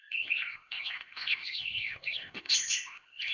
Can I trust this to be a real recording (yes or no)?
no